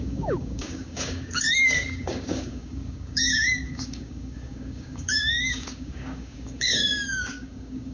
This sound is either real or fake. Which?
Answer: fake